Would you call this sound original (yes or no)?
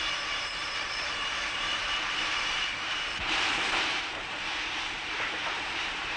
no